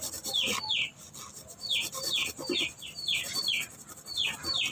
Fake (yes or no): no